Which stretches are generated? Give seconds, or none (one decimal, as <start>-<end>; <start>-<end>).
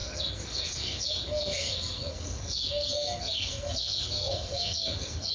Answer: 0.0-5.3